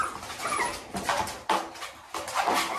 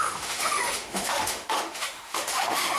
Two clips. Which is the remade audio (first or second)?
second